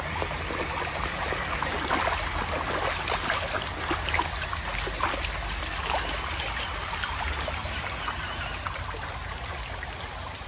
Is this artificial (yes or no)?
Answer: no